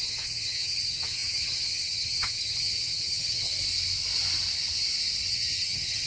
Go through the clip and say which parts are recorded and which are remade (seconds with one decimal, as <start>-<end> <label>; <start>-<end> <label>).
0.0-3.5 remade; 3.5-5.3 recorded; 5.3-6.1 remade